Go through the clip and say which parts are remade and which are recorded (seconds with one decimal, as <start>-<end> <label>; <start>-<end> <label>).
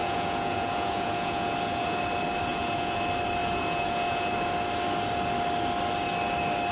0.0-2.0 remade; 2.0-2.5 recorded; 2.5-3.0 remade; 3.0-3.4 recorded; 3.4-4.3 remade; 4.3-6.7 recorded